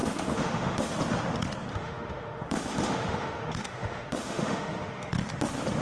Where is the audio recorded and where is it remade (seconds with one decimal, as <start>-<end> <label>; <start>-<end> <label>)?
0.0-0.9 remade; 0.9-1.7 recorded; 1.7-5.1 remade; 5.1-5.8 recorded

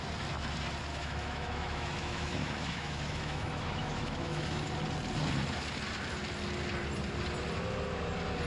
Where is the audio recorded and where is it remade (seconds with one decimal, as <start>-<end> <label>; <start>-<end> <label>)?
0.0-0.9 recorded; 0.9-4.7 remade; 4.7-8.5 recorded

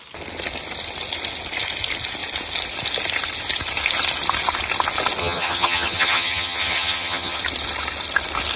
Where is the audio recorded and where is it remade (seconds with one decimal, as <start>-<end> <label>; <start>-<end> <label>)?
0.0-5.2 recorded; 5.2-7.4 remade; 7.4-8.6 recorded

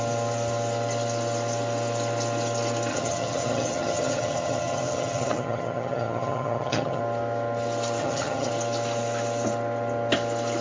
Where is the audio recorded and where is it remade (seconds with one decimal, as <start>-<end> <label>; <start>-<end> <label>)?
0.0-2.9 recorded; 2.9-7.0 remade; 7.0-8.0 recorded; 8.0-8.5 remade; 8.5-10.6 recorded

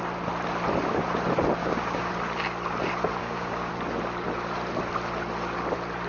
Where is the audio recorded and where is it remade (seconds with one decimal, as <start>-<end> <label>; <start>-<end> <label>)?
0.0-1.6 recorded; 1.6-2.1 remade; 2.1-3.2 recorded; 3.2-3.7 remade; 3.7-6.1 recorded

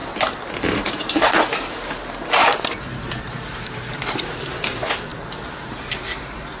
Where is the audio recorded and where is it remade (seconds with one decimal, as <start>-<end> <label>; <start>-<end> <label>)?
0.0-1.1 remade; 1.1-2.4 recorded; 2.4-4.5 remade; 4.5-6.6 recorded